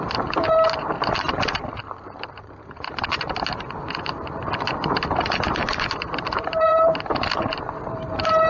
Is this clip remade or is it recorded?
remade